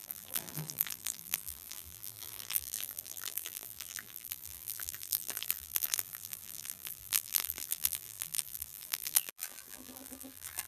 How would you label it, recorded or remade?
remade